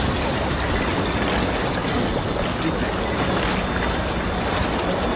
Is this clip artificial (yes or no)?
no